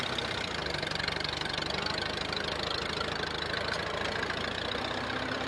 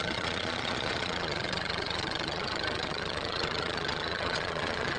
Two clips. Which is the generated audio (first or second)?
second